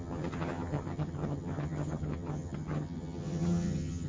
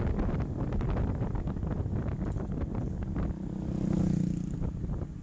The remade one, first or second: first